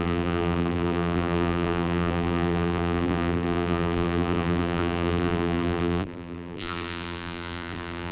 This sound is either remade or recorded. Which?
remade